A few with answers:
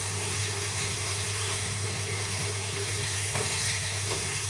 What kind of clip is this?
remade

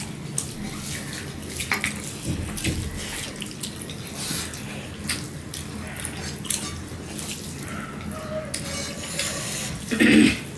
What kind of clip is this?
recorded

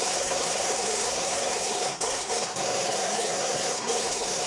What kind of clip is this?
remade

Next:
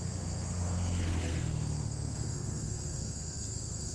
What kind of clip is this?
remade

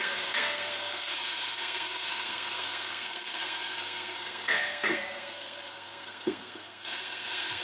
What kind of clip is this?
remade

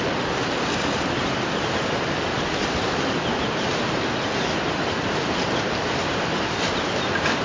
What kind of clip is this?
recorded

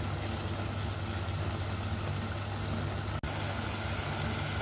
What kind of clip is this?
recorded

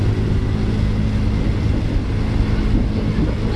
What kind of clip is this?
recorded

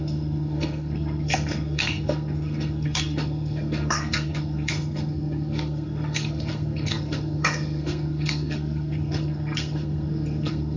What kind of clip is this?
remade